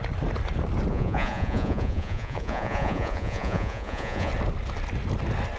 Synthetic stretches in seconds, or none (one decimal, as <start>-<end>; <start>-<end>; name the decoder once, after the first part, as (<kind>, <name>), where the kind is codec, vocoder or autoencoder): 0.9-4.3 (vocoder, Vocos)